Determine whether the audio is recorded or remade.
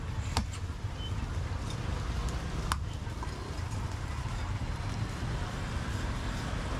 recorded